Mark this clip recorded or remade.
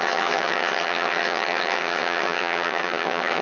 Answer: remade